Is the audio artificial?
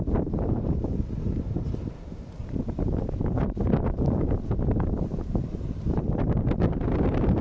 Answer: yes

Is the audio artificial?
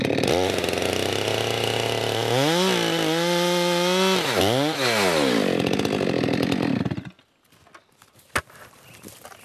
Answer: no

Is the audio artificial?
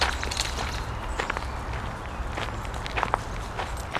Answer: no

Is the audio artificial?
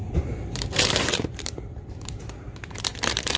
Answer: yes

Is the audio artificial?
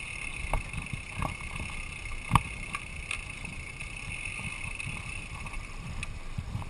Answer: no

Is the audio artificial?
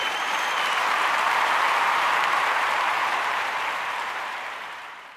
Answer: yes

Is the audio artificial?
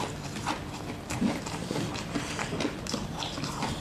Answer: yes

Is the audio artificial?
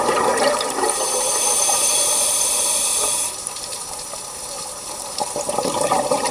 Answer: yes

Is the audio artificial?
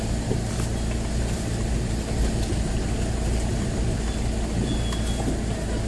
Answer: no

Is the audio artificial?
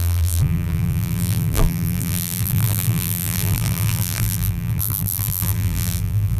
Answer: yes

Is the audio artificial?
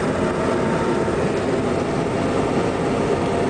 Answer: no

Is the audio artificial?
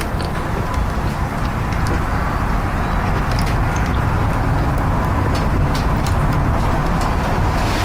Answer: no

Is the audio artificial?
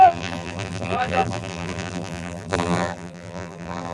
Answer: yes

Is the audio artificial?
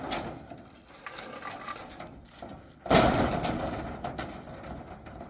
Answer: no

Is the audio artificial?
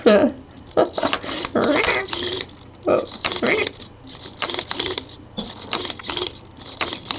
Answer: yes